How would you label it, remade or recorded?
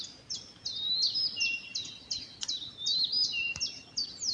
recorded